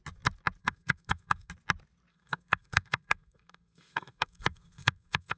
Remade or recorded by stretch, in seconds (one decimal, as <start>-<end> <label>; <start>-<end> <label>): 0.0-0.6 recorded; 0.6-1.5 remade; 1.5-2.1 recorded; 2.1-5.4 remade